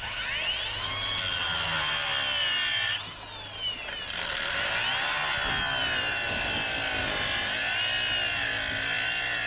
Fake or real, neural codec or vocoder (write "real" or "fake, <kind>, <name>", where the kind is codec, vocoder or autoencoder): real